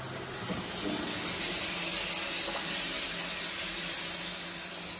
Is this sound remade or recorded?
recorded